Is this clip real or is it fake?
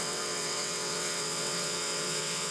fake